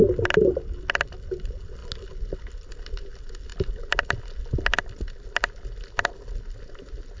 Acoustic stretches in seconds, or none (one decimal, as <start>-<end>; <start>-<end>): 0.0-7.2